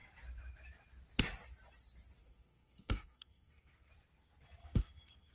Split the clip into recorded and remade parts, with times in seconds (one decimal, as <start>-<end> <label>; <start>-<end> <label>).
0.0-2.2 recorded; 2.2-3.9 remade; 3.9-4.6 recorded; 4.6-5.3 remade